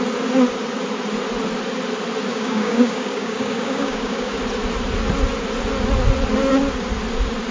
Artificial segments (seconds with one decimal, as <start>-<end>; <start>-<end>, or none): 2.3-4.4